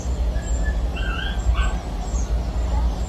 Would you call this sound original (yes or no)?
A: yes